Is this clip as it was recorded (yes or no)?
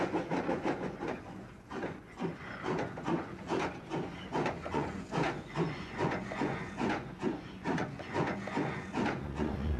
no